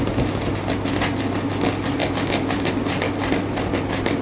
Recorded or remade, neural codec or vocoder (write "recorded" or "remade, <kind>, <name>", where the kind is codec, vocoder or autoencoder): recorded